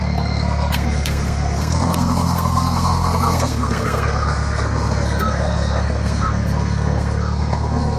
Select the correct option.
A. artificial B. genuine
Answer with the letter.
A